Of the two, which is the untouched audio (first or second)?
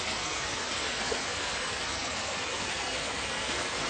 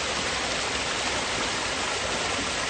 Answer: second